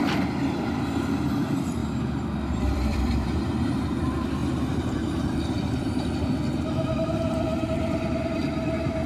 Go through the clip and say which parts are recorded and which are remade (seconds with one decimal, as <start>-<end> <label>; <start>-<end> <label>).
0.0-4.4 remade; 4.4-6.6 recorded; 6.6-9.1 remade